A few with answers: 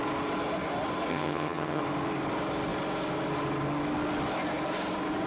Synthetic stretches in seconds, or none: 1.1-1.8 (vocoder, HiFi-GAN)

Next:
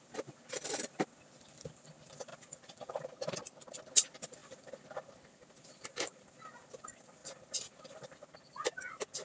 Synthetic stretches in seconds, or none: none

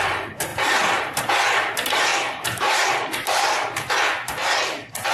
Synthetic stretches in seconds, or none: 0.5-1.3 (vocoder, BigVGAN v2); 2.1-4.1